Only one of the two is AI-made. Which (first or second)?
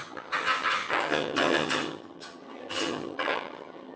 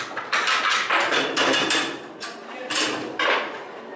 first